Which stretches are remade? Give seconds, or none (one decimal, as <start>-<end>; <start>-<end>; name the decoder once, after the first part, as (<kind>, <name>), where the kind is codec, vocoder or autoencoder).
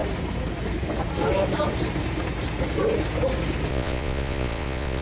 3.7-5.0 (vocoder, Vocos)